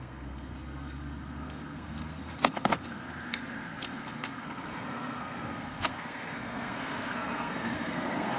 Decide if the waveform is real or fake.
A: fake